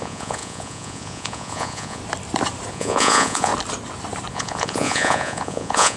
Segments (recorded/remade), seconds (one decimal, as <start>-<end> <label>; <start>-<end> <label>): 0.0-2.0 remade; 2.0-2.7 recorded; 2.7-3.5 remade; 3.5-4.3 recorded; 4.3-6.0 remade